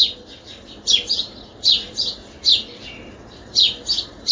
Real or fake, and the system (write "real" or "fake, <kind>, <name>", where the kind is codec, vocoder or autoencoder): real